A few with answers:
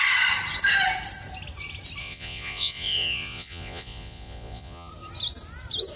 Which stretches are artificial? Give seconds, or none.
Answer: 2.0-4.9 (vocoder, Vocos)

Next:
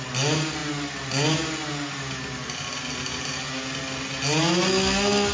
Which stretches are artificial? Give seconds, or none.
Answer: none